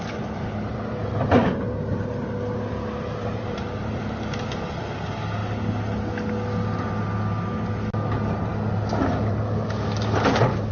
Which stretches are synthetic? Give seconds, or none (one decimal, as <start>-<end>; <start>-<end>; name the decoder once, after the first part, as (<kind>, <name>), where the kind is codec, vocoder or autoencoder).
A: 1.0-2.1 (vocoder, BigVGAN v2); 3.2-4.6